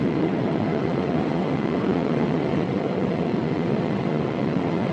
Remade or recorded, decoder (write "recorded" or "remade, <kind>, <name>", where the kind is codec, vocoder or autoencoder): remade, vocoder, WaveNeXt